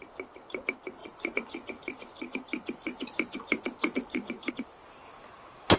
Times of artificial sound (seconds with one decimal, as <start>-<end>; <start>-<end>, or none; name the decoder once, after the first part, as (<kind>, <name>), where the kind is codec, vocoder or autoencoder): 1.0-4.5 (vocoder, Vocos)